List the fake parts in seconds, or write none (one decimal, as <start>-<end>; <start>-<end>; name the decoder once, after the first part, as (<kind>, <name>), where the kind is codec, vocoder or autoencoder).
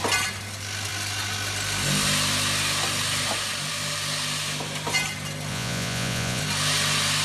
5.5-6.4 (vocoder, Vocos)